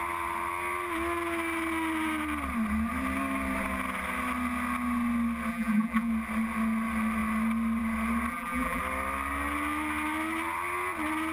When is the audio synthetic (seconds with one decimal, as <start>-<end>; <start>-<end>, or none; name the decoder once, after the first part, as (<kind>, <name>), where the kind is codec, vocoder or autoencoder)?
5.5-6.1 (vocoder, BigVGAN v2); 8.3-8.8